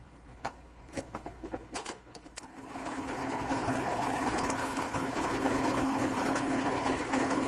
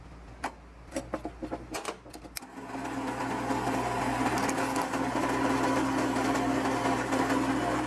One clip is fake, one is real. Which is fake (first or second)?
first